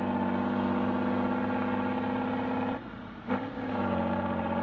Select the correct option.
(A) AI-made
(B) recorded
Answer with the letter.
B